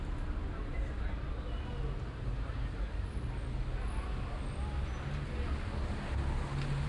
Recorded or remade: recorded